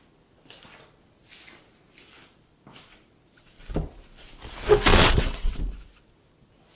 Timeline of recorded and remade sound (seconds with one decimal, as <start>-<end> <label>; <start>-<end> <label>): 0.0-4.9 recorded; 4.9-5.6 remade; 5.6-6.8 recorded